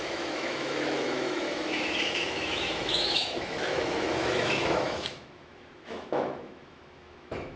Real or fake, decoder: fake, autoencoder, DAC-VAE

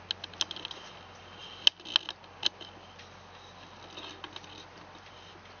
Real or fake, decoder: real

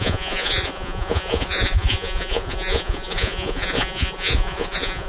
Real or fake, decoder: fake, vocoder, Vocos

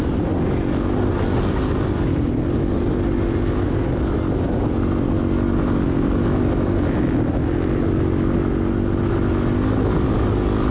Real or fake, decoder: real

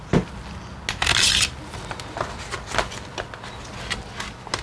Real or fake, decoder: real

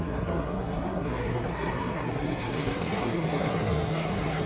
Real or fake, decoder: fake, codec, SNAC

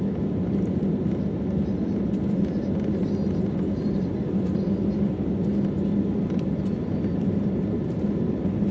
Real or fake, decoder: real